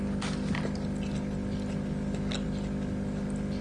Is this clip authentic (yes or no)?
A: yes